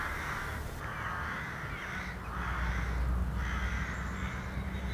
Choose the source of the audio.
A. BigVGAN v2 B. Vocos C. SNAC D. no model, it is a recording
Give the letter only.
D